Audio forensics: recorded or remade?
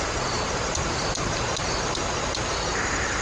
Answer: remade